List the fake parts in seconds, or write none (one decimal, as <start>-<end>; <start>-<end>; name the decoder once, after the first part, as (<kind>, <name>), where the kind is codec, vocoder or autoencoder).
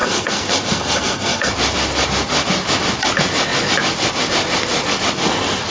0.0-1.5 (codec, SNAC)